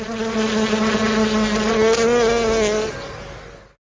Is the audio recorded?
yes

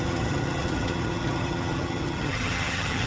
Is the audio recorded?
no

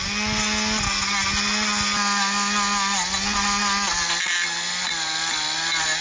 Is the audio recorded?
yes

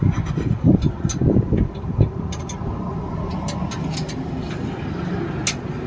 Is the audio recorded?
yes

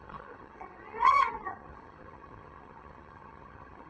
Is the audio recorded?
no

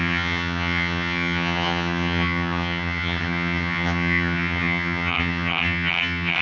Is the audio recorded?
no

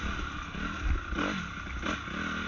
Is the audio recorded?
yes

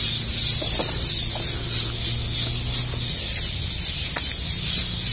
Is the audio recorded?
yes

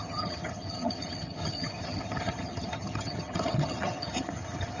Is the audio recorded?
no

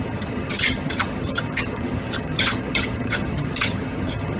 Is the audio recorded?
no